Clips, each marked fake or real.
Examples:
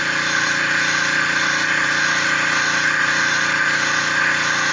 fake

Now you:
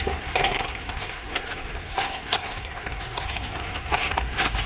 fake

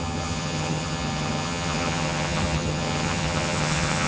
fake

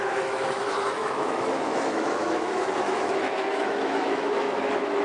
fake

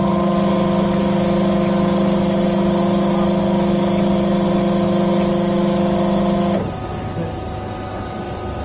real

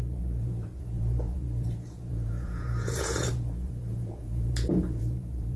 fake